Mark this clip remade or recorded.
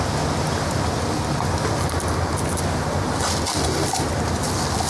recorded